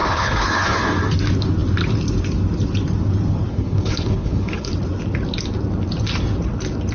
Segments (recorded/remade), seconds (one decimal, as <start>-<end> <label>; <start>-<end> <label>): 0.0-0.8 remade; 0.8-3.5 recorded; 3.5-4.7 remade; 4.7-6.9 recorded